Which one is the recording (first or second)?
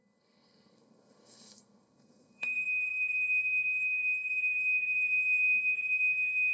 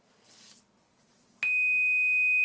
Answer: second